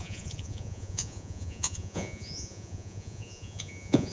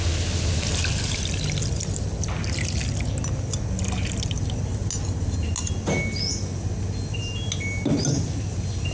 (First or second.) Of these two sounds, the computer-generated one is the first